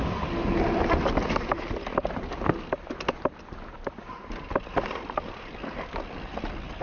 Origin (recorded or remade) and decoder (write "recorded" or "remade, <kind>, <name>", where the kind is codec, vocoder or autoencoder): recorded